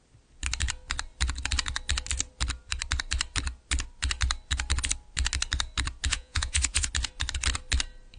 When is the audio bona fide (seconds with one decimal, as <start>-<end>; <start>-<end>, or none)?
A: 0.0-6.1; 6.9-8.2